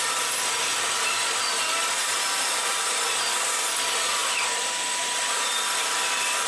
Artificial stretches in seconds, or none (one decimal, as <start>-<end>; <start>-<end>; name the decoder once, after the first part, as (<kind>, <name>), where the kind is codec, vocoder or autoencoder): none